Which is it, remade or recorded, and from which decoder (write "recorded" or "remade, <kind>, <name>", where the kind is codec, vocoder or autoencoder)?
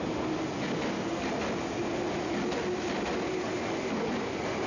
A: recorded